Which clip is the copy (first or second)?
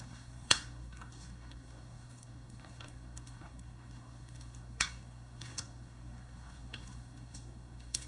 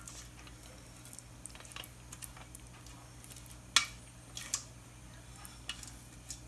first